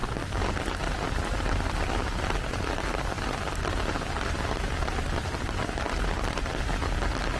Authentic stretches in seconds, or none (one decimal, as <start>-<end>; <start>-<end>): 0.0-7.4